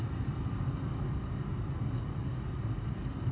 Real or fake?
real